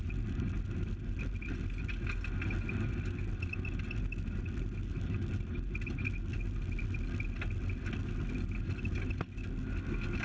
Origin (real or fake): real